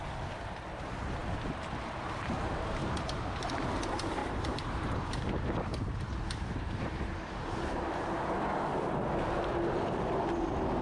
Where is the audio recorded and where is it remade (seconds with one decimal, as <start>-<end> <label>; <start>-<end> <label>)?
0.0-2.8 recorded; 2.8-3.5 remade; 3.5-4.2 recorded; 4.2-5.2 remade; 5.2-5.7 recorded; 5.7-8.2 remade; 8.2-10.8 recorded